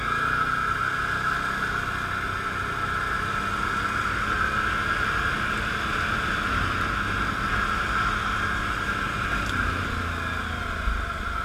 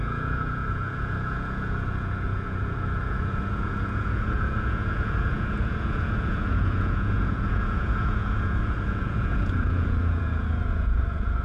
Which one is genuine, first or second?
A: first